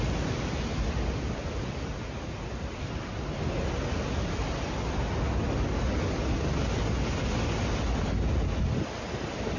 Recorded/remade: recorded